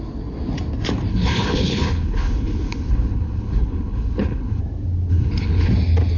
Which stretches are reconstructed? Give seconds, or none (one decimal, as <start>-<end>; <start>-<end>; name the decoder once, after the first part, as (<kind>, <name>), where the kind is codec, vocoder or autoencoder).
1.1-4.6 (codec, HILCodec); 5.1-5.7

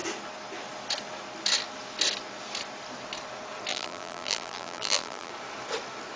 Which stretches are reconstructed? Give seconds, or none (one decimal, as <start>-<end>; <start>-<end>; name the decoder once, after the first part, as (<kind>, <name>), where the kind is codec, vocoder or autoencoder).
3.7-5.3 (vocoder, BigVGAN v2)

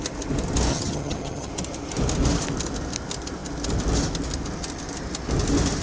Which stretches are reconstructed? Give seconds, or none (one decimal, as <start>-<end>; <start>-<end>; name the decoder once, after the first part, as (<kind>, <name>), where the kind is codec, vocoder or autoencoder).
0.7-1.5 (vocoder, HiFi-GAN)

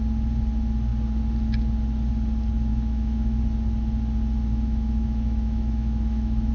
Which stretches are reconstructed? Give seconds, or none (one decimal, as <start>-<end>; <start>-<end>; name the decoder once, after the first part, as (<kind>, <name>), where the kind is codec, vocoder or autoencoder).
2.7-3.4 (autoencoder, DAC-VAE); 4.5-6.5